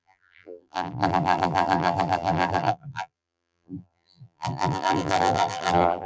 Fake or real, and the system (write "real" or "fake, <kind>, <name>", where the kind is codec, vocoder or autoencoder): fake, vocoder, BigVGAN v2